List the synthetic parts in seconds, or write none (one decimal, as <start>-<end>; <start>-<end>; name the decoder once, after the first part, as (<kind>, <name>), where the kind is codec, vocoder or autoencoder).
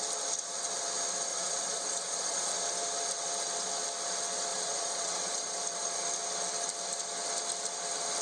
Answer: 1.3-2.5 (vocoder, Vocos); 4.5-5.6